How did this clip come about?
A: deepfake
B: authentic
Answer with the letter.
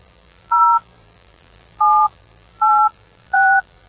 A